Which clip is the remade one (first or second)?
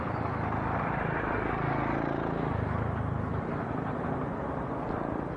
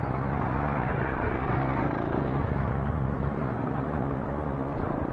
second